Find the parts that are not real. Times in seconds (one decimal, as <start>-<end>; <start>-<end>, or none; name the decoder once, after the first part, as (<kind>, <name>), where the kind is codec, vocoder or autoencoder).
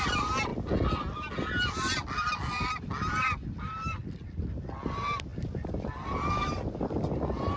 none